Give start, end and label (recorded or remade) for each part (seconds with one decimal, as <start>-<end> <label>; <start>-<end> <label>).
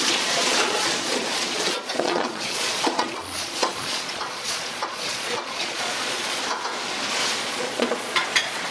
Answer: 0.0-6.4 remade; 6.4-7.4 recorded; 7.4-8.7 remade